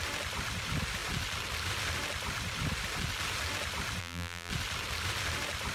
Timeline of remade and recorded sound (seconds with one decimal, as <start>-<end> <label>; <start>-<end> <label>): 0.0-4.0 recorded; 4.0-4.5 remade; 4.5-5.7 recorded